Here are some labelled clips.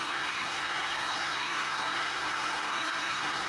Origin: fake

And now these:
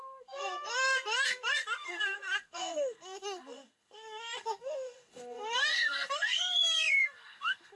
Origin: fake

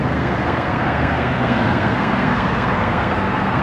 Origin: fake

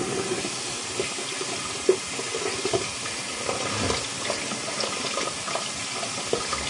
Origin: real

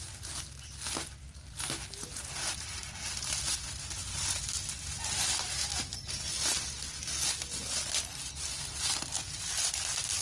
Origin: real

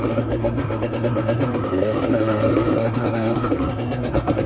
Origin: fake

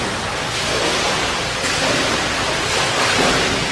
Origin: real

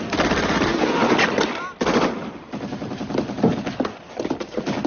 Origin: real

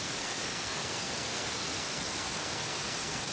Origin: fake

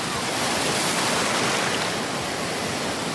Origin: real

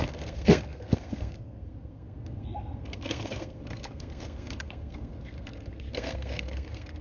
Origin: fake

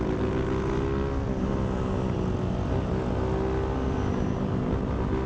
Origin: real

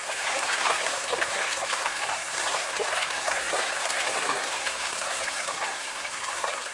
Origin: fake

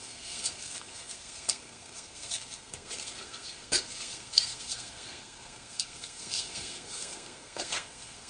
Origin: fake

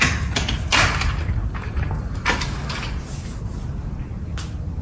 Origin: real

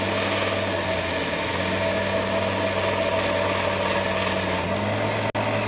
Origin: real